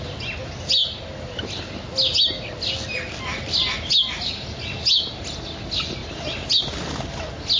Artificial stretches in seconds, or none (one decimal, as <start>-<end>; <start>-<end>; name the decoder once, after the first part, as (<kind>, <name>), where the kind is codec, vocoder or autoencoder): none